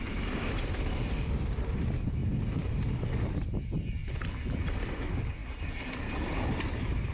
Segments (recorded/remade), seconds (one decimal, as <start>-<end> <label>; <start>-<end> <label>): 0.0-4.0 remade; 4.0-4.9 recorded; 4.9-5.4 remade; 5.4-6.0 recorded; 6.0-7.1 remade